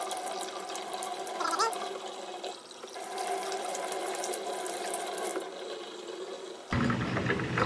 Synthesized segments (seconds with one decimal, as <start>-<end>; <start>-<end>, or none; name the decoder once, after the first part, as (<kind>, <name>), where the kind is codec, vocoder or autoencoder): none